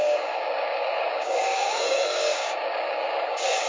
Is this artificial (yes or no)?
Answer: yes